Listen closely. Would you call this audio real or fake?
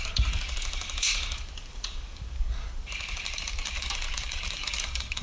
fake